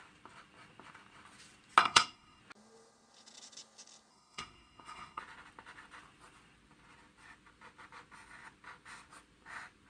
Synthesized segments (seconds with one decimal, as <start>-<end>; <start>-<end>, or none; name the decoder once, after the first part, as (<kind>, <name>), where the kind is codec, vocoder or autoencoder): 1.8-2.4 (codec, SNAC); 4.1-5.2